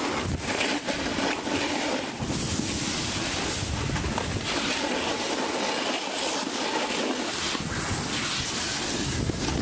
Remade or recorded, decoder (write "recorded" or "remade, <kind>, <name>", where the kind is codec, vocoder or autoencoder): recorded